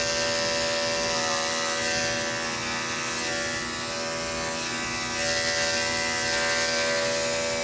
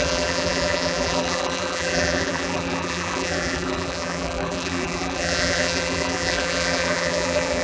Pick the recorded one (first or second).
first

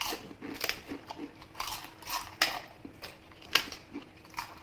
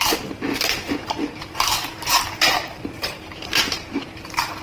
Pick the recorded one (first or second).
first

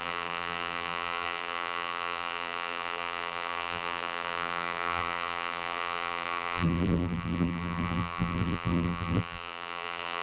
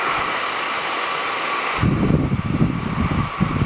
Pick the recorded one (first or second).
second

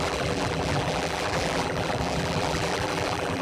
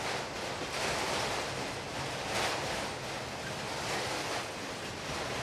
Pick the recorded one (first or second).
second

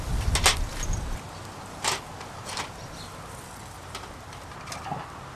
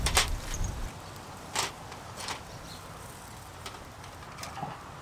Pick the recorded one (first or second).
first